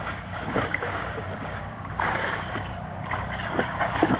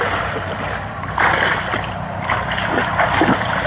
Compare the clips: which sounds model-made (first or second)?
first